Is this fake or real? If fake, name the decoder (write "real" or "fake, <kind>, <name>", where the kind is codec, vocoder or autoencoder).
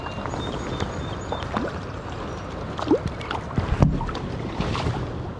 real